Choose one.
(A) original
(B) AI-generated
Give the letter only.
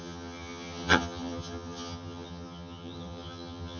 B